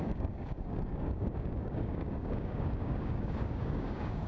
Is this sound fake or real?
fake